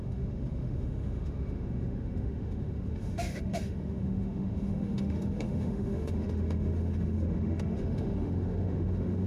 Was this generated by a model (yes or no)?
yes